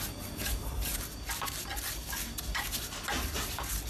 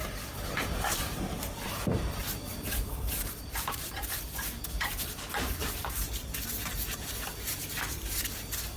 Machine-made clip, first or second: second